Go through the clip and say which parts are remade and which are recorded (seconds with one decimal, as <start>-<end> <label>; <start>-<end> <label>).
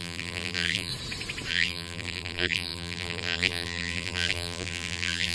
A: 0.0-0.9 remade; 0.9-1.5 recorded; 1.5-5.3 remade